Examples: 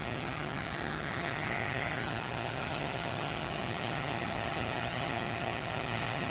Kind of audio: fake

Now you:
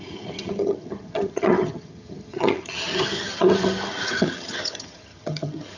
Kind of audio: fake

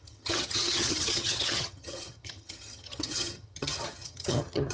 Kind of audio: fake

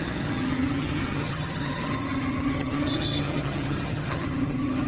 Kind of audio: fake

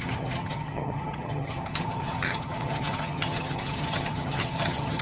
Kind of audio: fake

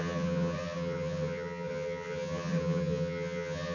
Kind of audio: fake